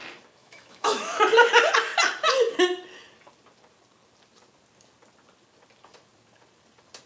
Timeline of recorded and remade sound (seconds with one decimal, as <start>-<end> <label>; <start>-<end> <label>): 0.0-0.4 recorded; 0.4-1.2 remade; 1.2-7.1 recorded

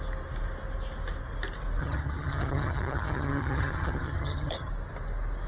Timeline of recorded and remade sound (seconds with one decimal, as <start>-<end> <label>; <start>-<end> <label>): 0.0-1.8 recorded; 1.8-4.7 remade; 4.7-5.5 recorded

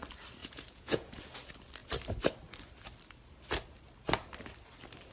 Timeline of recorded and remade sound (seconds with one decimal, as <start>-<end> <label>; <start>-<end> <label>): 0.0-0.4 recorded; 0.4-1.2 remade; 1.2-5.1 recorded

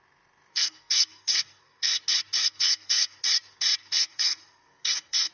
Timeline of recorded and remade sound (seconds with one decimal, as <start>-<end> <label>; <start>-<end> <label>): 0.0-0.5 recorded; 0.5-2.0 remade; 2.0-2.4 recorded; 2.4-3.2 remade; 3.2-3.8 recorded; 3.8-5.3 remade

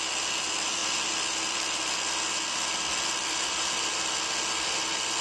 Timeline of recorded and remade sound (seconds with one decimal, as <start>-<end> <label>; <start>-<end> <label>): 0.0-5.2 recorded

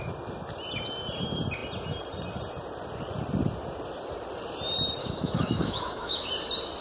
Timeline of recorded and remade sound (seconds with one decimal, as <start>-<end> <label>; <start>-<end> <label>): 0.0-5.0 recorded; 5.0-6.3 remade; 6.3-6.8 recorded

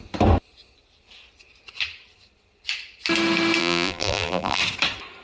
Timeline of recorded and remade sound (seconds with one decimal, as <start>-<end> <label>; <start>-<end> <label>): 0.0-3.6 recorded; 3.6-4.6 remade; 4.6-5.2 recorded